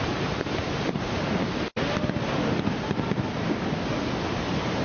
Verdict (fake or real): real